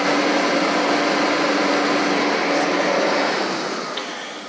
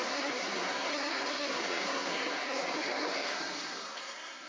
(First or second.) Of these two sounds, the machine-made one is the second